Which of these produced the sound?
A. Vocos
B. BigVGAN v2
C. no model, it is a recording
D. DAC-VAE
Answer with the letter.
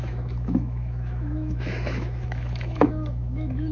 D